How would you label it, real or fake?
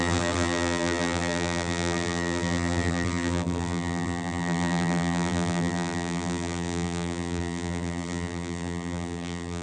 fake